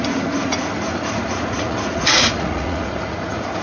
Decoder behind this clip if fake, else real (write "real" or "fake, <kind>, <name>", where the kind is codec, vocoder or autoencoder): fake, vocoder, Vocos